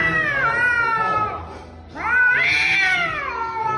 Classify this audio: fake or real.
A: real